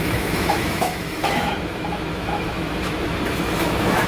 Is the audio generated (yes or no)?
yes